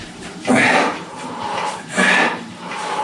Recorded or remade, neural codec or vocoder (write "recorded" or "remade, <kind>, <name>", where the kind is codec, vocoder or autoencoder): remade, vocoder, BigVGAN v2